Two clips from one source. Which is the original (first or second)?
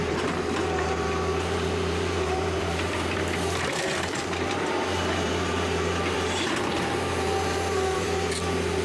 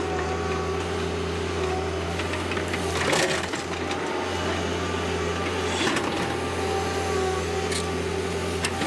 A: second